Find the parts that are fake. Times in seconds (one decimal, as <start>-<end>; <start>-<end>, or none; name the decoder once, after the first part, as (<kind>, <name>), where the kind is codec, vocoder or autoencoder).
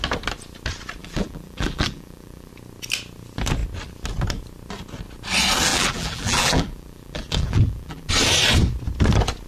1.0-2.5 (vocoder, BigVGAN v2); 5.7-8.1